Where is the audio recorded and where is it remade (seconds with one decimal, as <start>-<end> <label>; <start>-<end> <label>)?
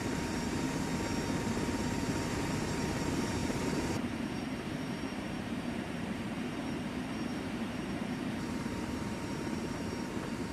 0.0-0.9 remade; 0.9-1.5 recorded; 1.5-10.5 remade